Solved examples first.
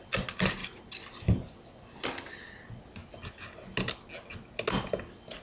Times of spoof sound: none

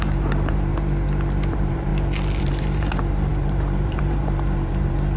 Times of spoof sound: 0.0-0.7 (vocoder, BigVGAN v2); 1.5-1.9; 2.4-5.2